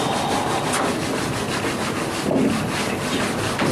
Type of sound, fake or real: real